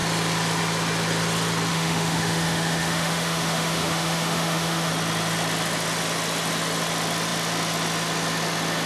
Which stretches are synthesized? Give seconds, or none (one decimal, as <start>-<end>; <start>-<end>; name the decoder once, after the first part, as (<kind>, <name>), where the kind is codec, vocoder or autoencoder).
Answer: 1.7-4.9 (autoencoder, DAC-VAE)